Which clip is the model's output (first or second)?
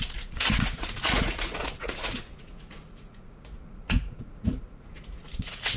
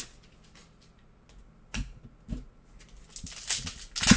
first